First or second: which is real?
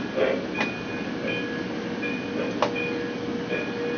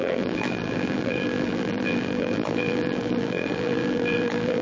first